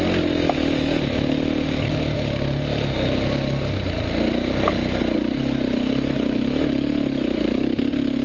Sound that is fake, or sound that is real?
real